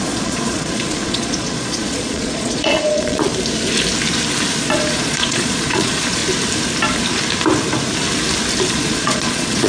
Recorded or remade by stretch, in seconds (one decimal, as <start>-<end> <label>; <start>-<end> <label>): 0.0-3.3 remade; 3.3-4.6 recorded; 4.6-6.2 remade; 6.2-8.7 recorded; 8.7-9.7 remade